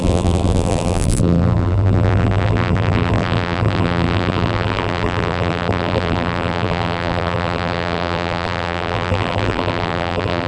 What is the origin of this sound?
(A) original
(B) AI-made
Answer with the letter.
B